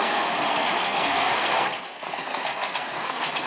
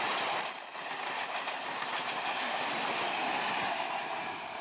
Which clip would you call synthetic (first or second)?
first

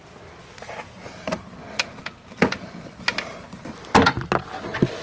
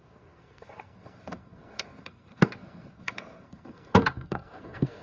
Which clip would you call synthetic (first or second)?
second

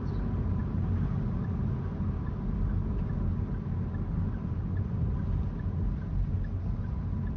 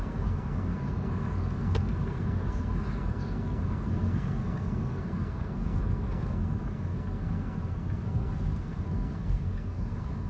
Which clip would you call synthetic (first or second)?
second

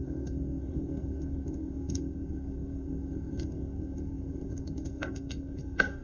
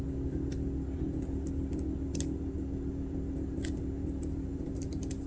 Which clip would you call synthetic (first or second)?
first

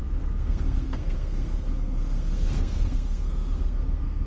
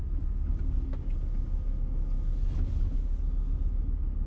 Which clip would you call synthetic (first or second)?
first